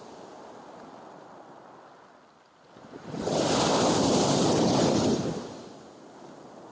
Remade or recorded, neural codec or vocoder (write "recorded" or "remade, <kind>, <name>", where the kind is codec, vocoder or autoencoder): recorded